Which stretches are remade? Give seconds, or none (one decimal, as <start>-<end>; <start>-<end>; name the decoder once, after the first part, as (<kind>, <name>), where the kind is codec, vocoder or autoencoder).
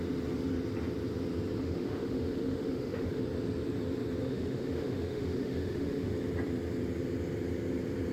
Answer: 1.6-3.2 (autoencoder, DAC-VAE); 4.2-6.1